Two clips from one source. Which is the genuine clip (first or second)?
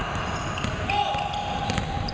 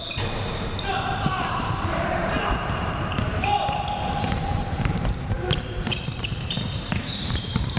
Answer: first